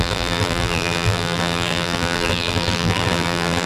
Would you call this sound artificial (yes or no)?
yes